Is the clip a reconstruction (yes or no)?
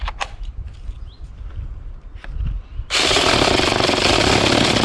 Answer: no